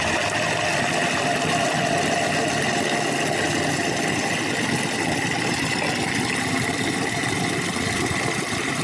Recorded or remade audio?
recorded